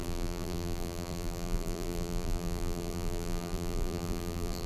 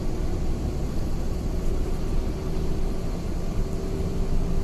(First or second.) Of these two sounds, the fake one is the first